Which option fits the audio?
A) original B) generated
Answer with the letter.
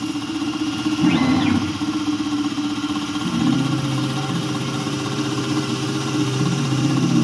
B